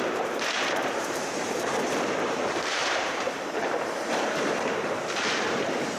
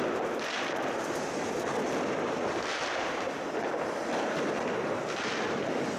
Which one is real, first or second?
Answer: second